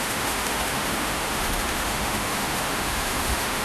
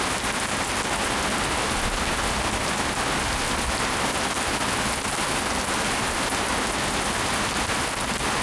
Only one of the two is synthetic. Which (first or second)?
first